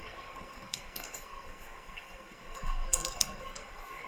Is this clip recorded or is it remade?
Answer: remade